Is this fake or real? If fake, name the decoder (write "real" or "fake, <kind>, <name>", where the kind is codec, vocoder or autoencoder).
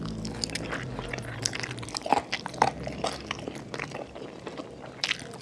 real